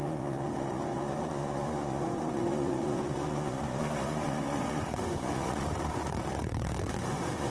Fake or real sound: fake